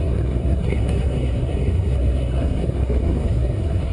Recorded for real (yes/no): no